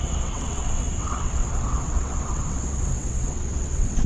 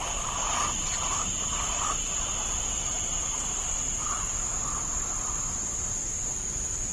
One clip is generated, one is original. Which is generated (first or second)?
first